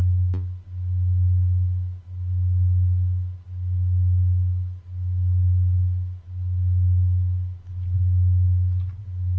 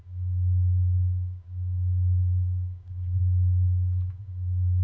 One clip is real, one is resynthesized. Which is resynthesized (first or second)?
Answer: second